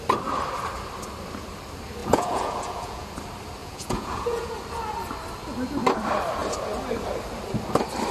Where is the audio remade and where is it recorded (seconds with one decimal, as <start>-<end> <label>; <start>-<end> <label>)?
0.0-2.0 recorded; 2.0-3.1 remade; 3.1-3.6 recorded; 3.6-4.5 remade; 4.5-8.1 recorded